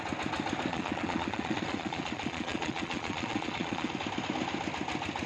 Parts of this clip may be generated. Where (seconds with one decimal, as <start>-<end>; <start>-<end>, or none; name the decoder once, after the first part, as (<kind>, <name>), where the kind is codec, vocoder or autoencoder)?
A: 0.7-3.9 (vocoder, Vocos)